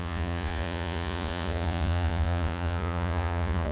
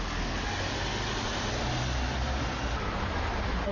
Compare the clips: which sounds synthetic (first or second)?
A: first